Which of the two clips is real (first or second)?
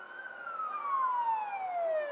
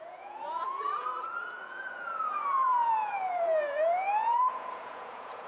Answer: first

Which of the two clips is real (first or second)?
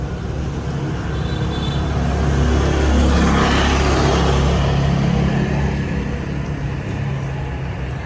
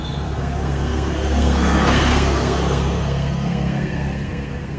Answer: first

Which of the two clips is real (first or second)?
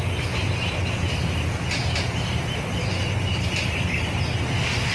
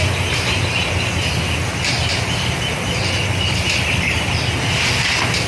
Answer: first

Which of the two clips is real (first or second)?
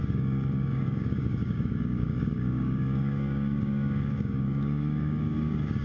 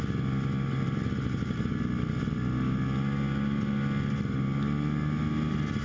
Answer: second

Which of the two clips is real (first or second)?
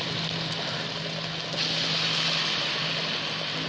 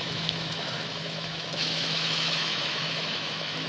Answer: first